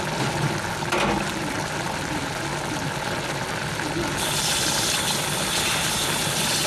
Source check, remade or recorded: recorded